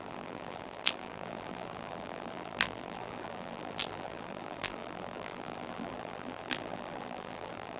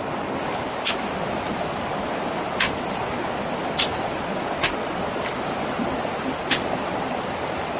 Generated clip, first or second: first